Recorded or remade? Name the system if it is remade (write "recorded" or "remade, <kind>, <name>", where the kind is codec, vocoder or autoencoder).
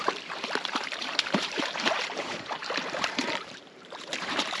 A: remade, vocoder, BigVGAN v2